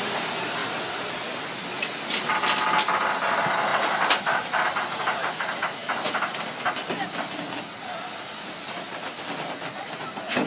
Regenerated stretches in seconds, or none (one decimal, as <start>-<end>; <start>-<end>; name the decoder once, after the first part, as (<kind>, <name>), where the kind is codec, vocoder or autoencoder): 3.7-5.0 (vocoder, BigVGAN v2); 5.8-6.7